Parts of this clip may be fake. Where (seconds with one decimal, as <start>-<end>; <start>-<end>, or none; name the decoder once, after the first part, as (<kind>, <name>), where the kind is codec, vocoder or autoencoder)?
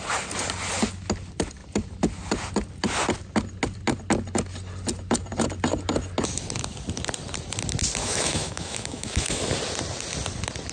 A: 8.0-9.4 (autoencoder, DAC-VAE)